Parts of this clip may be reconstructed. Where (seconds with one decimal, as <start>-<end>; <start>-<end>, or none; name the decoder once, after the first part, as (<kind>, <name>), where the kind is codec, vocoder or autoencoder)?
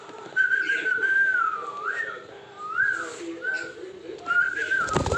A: 0.0-1.5 (vocoder, BigVGAN v2); 4.6-5.2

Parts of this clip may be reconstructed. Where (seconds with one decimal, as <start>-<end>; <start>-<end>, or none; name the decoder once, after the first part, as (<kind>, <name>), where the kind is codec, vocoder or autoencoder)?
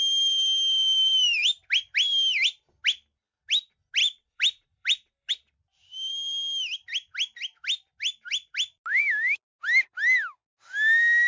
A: 4.0-5.3 (vocoder, BigVGAN v2)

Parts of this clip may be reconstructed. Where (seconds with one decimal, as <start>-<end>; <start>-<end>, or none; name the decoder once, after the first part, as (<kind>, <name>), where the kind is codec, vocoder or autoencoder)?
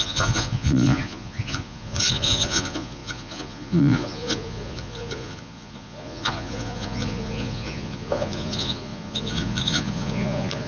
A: 0.0-10.7 (vocoder, Vocos)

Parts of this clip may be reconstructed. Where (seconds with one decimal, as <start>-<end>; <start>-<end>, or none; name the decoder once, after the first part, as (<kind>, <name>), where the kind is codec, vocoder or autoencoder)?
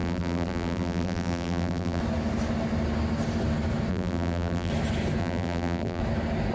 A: 0.0-2.0 (vocoder, BigVGAN v2); 3.9-4.7; 5.2-6.0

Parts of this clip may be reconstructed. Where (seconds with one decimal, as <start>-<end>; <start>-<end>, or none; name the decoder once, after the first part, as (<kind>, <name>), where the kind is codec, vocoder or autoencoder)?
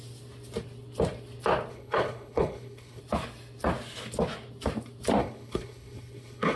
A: 1.7-3.0 (codec, HILCodec); 5.2-6.6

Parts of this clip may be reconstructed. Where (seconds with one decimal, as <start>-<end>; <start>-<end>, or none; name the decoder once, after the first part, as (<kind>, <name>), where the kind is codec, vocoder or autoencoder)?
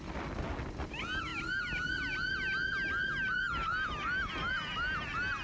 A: none